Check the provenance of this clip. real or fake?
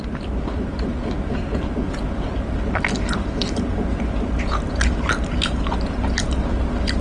real